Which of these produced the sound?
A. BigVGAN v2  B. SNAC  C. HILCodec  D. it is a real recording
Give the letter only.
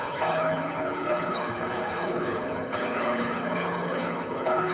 C